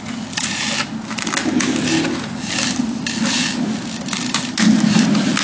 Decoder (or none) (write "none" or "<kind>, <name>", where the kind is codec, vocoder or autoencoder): none